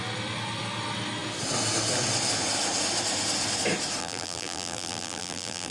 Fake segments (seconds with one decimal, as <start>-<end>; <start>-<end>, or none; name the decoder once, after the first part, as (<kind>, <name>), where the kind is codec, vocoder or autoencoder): 4.0-5.7 (vocoder, BigVGAN v2)